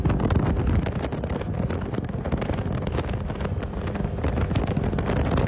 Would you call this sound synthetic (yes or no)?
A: no